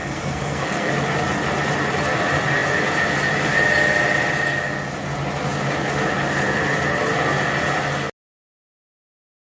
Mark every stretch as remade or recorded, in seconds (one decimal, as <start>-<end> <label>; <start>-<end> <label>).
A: 0.0-0.9 remade; 0.9-9.6 recorded